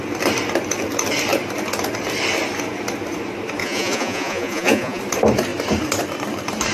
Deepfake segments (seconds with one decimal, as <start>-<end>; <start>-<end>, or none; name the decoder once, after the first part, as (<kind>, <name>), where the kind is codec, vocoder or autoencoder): 3.6-5.0 (vocoder, Vocos)